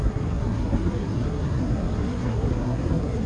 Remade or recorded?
remade